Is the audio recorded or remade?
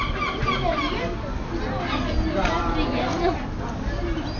recorded